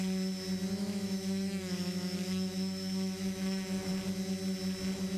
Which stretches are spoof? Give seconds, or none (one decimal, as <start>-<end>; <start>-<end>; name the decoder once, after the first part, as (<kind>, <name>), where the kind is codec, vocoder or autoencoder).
0.8-3.9 (autoencoder, DAC-VAE)